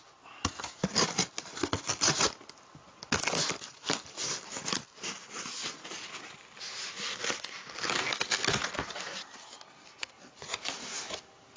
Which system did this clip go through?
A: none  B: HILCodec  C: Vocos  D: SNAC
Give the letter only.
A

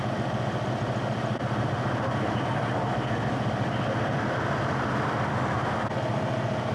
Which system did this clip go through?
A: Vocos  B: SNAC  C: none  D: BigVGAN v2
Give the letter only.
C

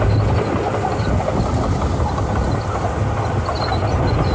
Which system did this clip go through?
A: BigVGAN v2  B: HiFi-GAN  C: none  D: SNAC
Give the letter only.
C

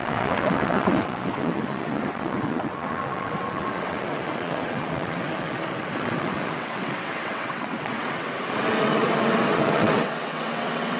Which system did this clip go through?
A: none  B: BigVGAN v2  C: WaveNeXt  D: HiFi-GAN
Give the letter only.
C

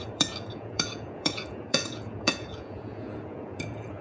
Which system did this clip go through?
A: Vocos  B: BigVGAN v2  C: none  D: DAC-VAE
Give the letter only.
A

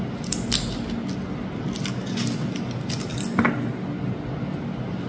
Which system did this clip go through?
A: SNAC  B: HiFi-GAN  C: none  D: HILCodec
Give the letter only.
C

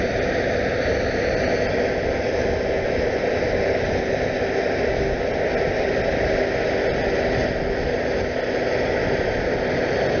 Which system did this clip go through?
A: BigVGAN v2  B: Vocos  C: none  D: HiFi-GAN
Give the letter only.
C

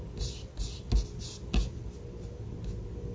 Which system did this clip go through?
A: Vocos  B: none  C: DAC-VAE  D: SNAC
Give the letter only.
B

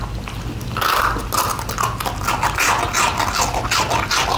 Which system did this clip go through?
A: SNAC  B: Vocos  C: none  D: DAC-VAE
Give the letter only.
C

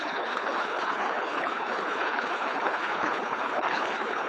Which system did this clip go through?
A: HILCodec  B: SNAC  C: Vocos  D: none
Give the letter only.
A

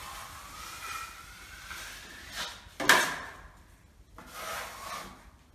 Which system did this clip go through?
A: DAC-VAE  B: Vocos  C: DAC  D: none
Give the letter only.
D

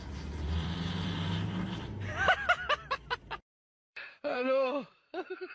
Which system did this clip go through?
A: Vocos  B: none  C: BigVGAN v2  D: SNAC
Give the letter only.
C